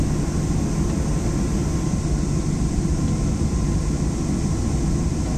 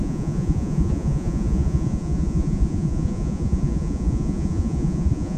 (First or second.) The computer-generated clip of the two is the second